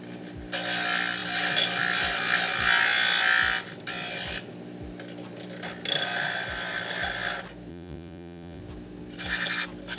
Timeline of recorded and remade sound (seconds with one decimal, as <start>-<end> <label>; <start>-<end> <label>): 0.0-7.7 recorded; 7.7-8.6 remade; 8.6-10.0 recorded